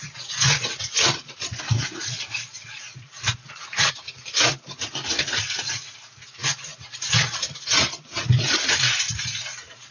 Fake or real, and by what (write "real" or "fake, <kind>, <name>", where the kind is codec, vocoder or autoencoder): fake, vocoder, Vocos